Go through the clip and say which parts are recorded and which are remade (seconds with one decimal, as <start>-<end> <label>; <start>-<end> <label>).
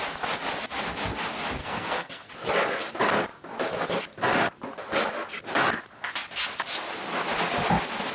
0.0-1.6 recorded; 1.6-2.3 remade; 2.3-8.1 recorded